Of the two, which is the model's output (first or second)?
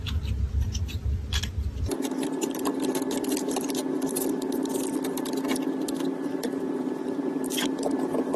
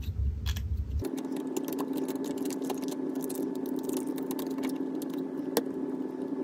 first